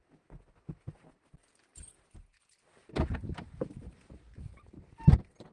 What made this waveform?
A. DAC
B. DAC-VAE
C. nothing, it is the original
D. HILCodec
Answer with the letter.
C